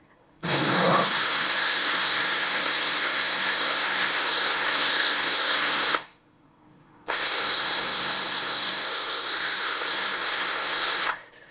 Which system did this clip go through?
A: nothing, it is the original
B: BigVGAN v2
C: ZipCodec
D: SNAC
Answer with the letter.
D